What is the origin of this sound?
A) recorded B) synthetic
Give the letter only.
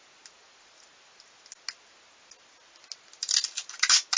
A